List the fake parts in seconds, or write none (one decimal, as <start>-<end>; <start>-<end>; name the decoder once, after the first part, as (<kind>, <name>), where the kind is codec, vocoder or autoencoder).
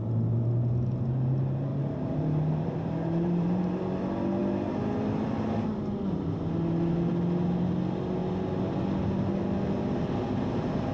1.7-3.8 (vocoder, BigVGAN v2)